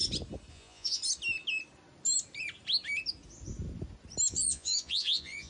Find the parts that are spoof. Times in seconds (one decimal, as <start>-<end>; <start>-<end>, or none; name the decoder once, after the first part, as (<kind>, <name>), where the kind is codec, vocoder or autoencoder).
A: 0.5-1.0 (vocoder, Vocos); 4.3-5.5